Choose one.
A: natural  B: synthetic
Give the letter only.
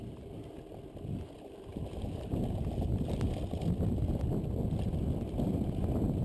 A